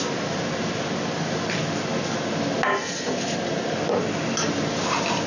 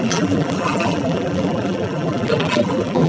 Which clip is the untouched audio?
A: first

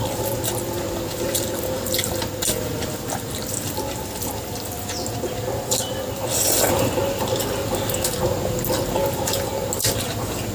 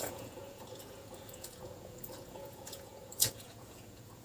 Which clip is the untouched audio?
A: first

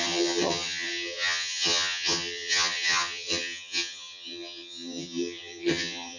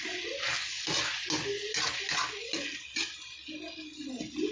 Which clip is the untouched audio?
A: second